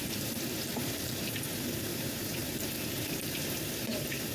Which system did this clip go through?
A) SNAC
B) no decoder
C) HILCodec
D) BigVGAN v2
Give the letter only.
D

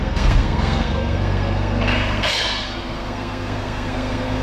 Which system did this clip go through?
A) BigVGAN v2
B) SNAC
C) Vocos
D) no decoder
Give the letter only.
B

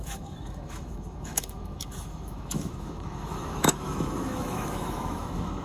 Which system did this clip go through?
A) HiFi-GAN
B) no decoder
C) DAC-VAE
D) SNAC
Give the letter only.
C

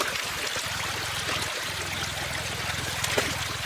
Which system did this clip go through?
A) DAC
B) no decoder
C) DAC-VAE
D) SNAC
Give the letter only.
B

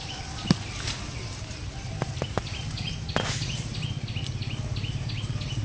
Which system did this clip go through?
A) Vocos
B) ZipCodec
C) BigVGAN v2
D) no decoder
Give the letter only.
D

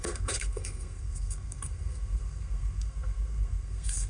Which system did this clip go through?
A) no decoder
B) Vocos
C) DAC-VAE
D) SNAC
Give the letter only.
D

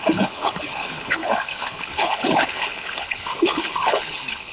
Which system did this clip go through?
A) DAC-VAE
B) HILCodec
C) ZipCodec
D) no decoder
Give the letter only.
B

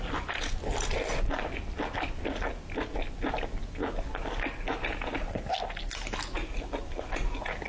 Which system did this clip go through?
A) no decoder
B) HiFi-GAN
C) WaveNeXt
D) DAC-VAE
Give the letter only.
A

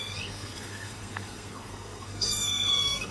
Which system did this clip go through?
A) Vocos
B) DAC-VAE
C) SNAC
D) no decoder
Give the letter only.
C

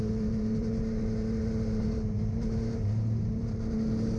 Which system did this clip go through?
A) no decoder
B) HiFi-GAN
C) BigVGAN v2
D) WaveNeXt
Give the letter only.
C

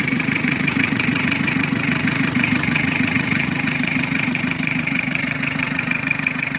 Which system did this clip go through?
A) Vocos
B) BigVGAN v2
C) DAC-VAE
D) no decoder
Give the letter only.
A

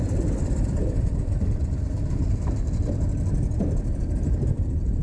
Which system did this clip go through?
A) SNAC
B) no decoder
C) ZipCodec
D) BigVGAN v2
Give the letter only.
D